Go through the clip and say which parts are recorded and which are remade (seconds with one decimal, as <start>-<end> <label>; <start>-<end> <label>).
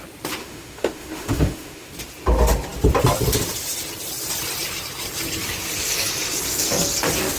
0.0-0.4 recorded; 0.4-1.9 remade; 1.9-7.4 recorded